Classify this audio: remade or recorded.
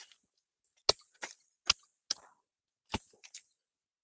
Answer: recorded